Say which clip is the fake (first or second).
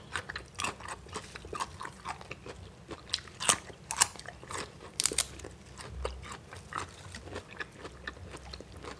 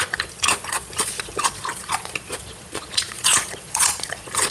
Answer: second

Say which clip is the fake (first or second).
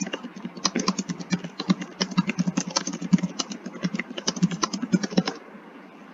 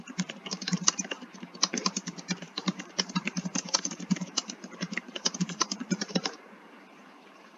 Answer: second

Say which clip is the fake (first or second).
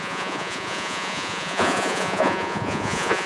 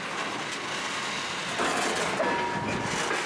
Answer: first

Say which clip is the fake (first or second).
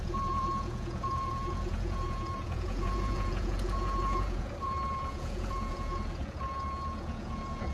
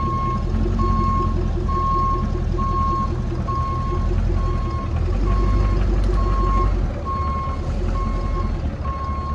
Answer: first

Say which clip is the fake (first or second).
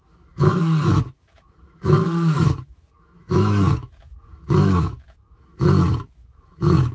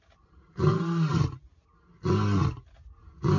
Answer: first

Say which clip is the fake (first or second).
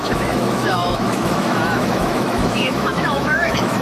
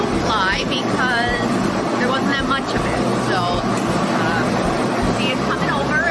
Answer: first